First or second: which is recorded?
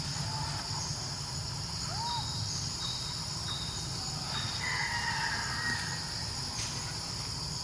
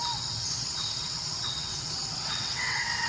first